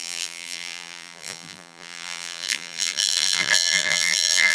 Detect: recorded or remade remade